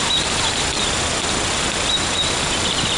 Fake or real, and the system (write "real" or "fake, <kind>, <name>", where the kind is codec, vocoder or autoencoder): real